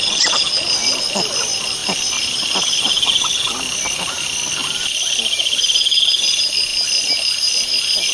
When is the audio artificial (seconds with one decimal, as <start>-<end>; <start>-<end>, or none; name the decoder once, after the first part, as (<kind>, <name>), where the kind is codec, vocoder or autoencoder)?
none